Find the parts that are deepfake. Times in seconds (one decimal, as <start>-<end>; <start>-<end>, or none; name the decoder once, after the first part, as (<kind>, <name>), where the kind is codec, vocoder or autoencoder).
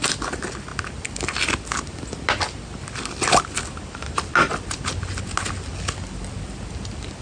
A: none